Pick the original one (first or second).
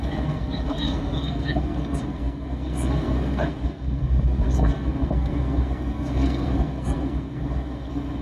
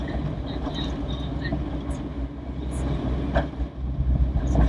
second